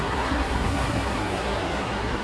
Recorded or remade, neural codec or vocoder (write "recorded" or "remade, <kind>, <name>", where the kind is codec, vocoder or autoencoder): remade, codec, SNAC